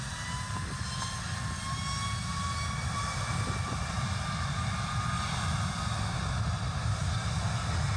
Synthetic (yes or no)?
no